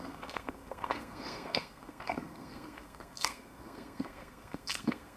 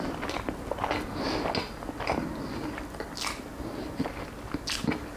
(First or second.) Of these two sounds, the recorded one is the second